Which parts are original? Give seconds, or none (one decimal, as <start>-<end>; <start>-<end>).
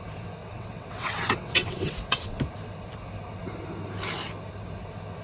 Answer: 0.0-0.4; 2.4-5.2